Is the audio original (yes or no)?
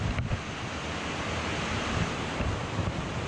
yes